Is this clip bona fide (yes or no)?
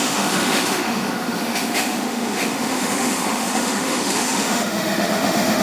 no